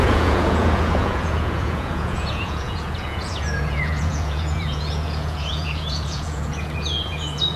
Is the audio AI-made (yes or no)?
yes